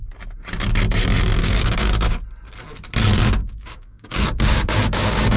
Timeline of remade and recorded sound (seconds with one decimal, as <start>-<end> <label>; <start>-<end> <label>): 0.0-1.4 recorded; 1.4-2.2 remade; 2.2-3.4 recorded; 3.4-5.4 remade